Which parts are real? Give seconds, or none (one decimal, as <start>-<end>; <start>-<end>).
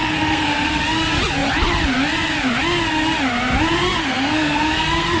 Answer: 0.8-4.0